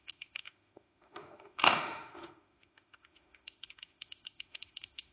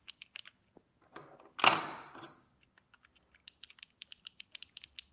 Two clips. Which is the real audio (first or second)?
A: second